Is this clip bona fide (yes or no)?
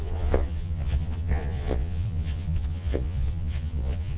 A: no